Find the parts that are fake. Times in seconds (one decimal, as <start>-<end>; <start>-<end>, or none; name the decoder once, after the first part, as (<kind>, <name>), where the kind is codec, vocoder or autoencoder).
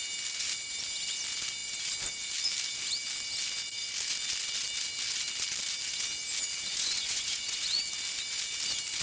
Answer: 6.7-7.8 (vocoder, Vocos)